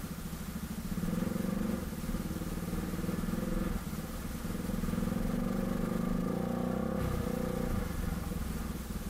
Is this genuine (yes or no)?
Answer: yes